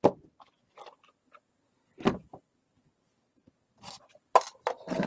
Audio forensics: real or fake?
real